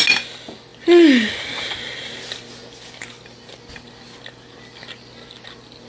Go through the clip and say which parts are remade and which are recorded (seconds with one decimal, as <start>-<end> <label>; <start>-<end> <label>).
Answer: 0.0-5.9 recorded